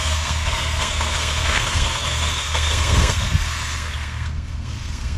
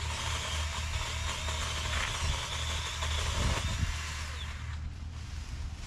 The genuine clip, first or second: second